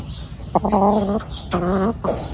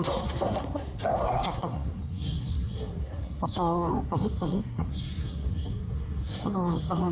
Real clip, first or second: first